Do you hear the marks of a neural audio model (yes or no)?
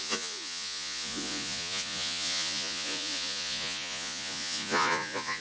yes